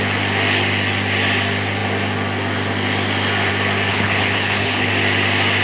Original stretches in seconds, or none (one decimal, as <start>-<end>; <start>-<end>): 0.0-3.9; 4.9-5.6